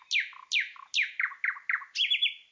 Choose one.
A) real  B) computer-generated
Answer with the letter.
A